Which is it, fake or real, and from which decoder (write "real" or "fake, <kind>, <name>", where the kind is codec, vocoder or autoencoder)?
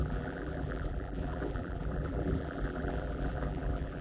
fake, vocoder, BigVGAN v2